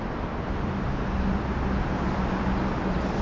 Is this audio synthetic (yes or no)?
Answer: no